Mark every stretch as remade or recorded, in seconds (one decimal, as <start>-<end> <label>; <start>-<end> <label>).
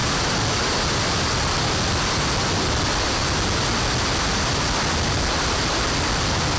0.0-6.6 recorded